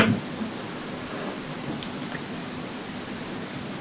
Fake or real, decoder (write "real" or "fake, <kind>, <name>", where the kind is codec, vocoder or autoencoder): real